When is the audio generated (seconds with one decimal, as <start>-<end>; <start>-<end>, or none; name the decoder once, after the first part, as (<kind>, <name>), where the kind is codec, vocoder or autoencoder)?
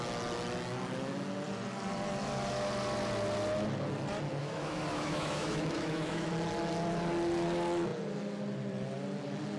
4.4-6.3 (autoencoder, DAC-VAE)